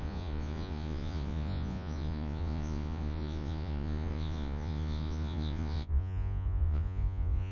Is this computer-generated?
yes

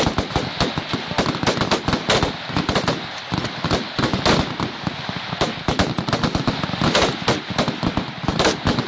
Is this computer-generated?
no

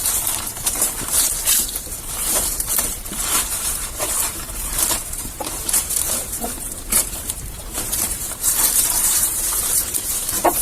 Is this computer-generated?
yes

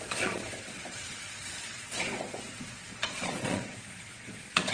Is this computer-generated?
yes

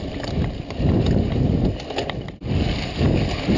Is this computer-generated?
no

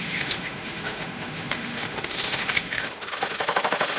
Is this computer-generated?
yes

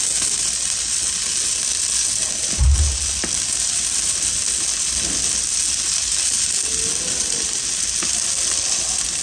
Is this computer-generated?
no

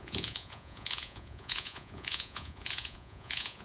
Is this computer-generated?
yes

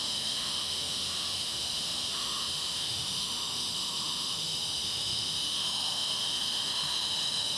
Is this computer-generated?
yes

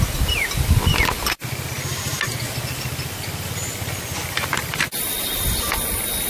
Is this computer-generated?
no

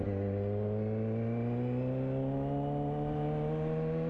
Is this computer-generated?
no